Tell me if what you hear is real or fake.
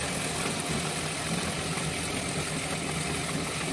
real